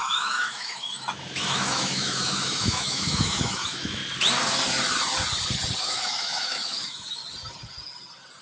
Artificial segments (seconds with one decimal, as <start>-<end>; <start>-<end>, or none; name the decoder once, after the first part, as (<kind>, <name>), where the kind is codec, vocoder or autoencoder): 0.0-4.0 (autoencoder, DAC-VAE); 5.8-7.2